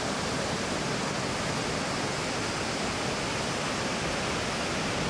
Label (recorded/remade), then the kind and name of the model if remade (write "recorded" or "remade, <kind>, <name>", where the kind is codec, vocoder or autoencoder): recorded